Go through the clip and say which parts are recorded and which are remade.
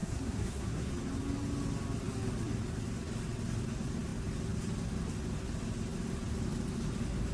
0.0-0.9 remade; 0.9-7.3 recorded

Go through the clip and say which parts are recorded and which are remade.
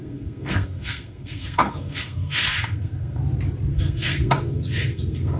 0.0-3.2 remade; 3.2-3.7 recorded; 3.7-5.4 remade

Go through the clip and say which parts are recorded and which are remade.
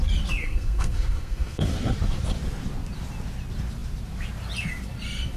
0.0-0.4 recorded; 0.4-1.6 remade; 1.6-5.4 recorded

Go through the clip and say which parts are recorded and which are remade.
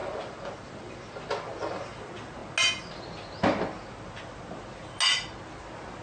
0.0-6.0 recorded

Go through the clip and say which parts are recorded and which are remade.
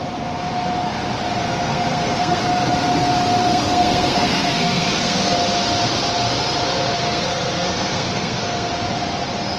0.0-1.4 recorded; 1.4-2.4 remade; 2.4-3.5 recorded; 3.5-5.4 remade; 5.4-7.0 recorded; 7.0-8.7 remade; 8.7-9.6 recorded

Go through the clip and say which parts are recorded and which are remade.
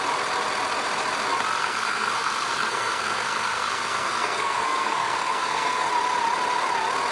0.0-1.6 recorded; 1.6-5.9 remade; 5.9-7.1 recorded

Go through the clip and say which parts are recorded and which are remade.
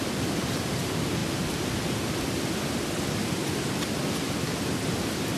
0.0-5.4 recorded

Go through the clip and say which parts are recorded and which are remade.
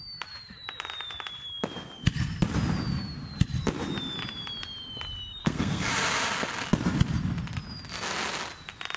0.0-5.4 recorded; 5.4-5.9 remade; 5.9-9.0 recorded